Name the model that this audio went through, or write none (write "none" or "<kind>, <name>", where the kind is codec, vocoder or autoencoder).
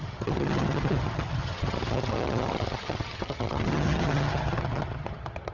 vocoder, HiFi-GAN